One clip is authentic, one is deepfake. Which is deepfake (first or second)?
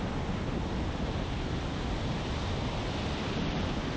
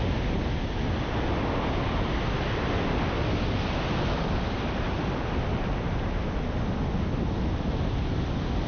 first